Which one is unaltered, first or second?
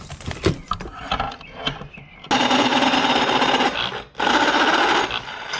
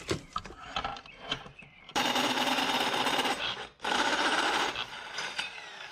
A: first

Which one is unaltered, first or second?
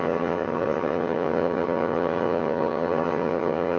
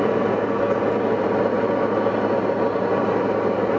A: second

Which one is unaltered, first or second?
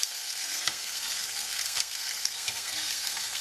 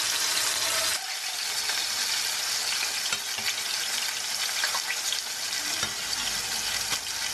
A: second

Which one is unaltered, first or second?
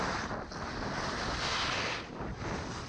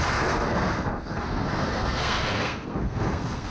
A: first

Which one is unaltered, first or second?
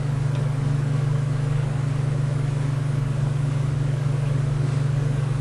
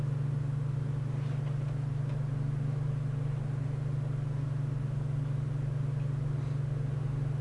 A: second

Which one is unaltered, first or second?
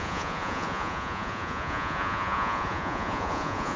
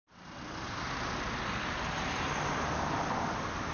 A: second